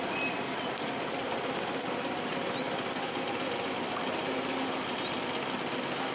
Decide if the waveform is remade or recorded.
recorded